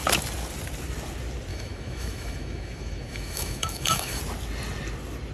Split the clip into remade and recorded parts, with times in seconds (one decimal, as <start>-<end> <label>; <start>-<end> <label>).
0.0-1.5 recorded; 1.5-4.2 remade; 4.2-5.3 recorded